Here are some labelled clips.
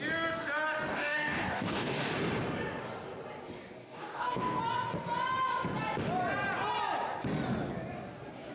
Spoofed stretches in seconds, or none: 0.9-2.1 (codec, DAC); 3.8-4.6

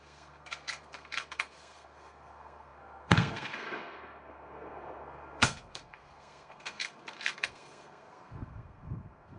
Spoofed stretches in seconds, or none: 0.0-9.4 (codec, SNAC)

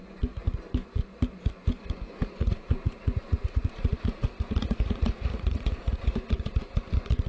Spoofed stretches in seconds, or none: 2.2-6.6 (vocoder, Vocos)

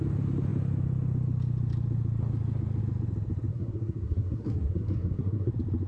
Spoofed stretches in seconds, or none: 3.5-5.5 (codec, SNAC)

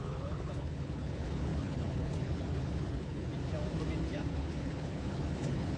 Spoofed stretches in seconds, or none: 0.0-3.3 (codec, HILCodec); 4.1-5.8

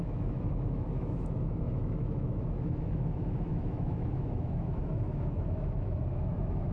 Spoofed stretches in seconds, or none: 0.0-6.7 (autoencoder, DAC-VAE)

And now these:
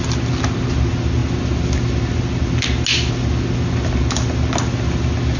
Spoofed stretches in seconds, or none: none